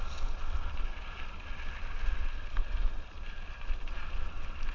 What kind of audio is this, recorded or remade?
recorded